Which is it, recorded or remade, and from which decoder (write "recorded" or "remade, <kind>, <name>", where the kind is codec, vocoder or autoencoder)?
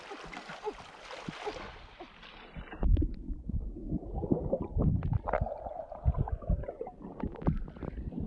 recorded